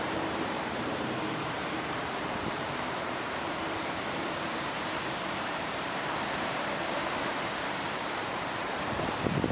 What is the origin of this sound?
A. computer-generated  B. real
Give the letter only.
A